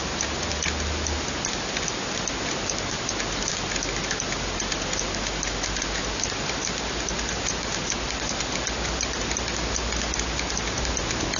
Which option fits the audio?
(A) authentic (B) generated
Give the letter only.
A